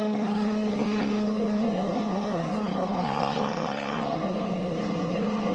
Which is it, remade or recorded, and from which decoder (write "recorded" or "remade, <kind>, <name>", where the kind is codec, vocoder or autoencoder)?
remade, codec, SNAC